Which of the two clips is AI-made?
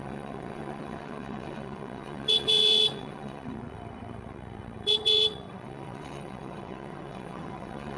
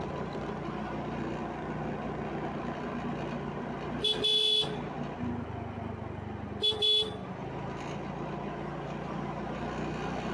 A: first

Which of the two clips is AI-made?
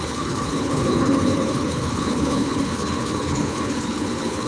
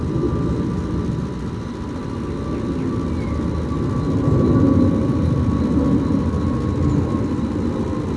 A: first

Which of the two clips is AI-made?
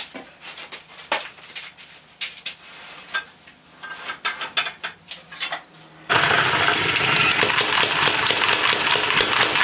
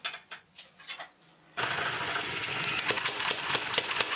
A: second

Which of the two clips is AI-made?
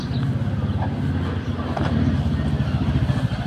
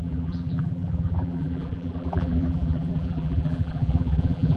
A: second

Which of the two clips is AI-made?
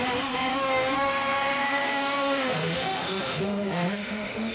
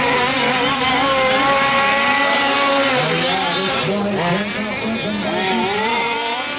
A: first